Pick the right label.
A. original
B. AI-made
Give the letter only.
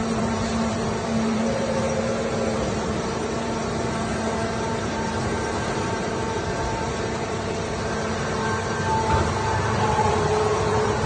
B